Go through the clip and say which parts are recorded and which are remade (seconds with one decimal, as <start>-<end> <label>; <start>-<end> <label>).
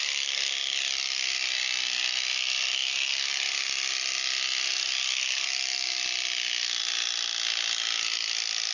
0.0-8.7 recorded